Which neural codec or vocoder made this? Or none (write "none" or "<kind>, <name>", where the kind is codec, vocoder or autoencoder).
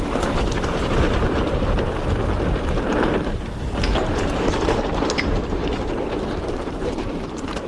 vocoder, BigVGAN v2